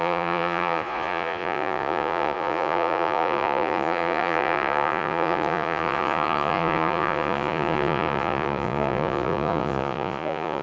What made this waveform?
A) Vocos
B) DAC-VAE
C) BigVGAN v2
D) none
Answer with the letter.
A